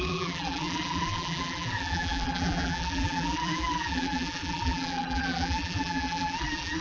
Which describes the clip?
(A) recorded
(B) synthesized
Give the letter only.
B